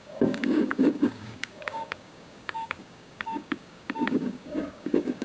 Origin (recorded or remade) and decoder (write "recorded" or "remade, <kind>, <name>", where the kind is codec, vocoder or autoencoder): remade, codec, DAC